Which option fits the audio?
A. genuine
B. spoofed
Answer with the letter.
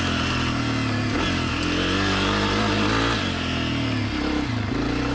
A